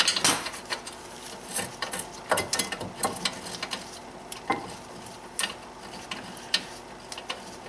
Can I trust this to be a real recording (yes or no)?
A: yes